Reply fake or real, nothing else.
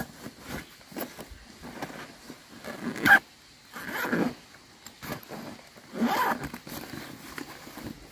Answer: real